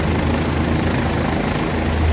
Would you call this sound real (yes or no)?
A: yes